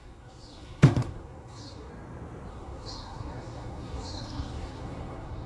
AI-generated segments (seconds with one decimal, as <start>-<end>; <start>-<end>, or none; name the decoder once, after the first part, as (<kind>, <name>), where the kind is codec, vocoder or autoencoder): 0.0-1.9 (codec, SNAC); 2.5-5.5